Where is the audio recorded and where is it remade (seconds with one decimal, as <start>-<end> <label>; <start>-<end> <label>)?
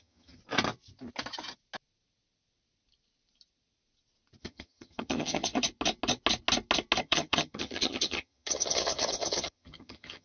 0.0-0.4 remade; 0.4-4.4 recorded; 4.4-5.5 remade; 5.5-7.0 recorded; 7.0-10.2 remade